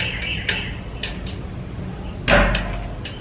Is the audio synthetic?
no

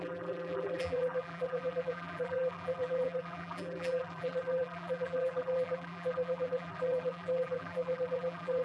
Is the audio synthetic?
yes